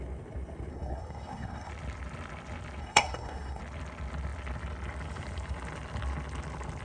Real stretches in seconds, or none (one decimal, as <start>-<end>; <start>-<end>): 0.0-0.7; 1.7-2.8; 3.6-6.8

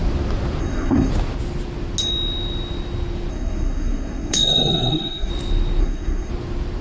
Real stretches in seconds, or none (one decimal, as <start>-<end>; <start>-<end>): 0.0-0.6; 1.1-3.3; 5.3-5.8; 6.3-6.8